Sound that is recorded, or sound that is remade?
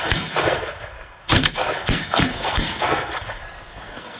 remade